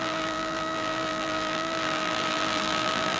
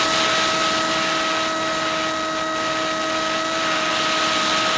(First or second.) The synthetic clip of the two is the first